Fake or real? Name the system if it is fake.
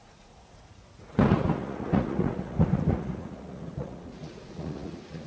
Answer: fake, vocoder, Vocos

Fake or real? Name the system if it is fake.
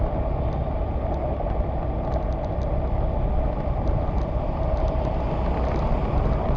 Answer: real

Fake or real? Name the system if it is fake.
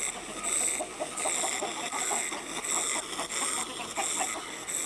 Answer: real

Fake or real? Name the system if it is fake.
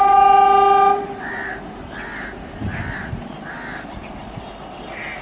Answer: real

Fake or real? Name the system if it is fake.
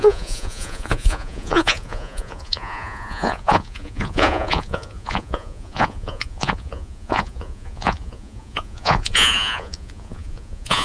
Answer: fake, vocoder, Vocos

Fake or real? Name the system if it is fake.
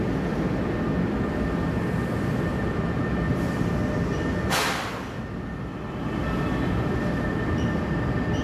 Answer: real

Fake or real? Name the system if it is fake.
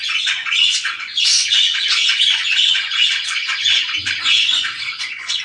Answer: fake, vocoder, Vocos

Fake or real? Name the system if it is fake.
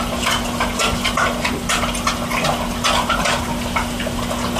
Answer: real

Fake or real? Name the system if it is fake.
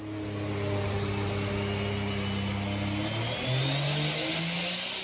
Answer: real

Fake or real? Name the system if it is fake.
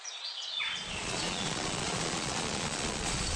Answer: fake, vocoder, Vocos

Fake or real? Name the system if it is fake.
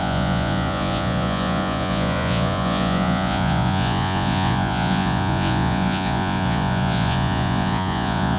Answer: fake, vocoder, Vocos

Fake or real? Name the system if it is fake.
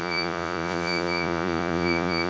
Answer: fake, vocoder, Vocos